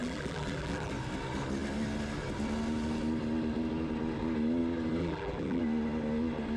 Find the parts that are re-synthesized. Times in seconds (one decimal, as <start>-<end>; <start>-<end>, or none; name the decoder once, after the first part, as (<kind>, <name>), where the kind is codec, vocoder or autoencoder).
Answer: 0.0-0.9 (vocoder, BigVGAN v2); 5.0-5.6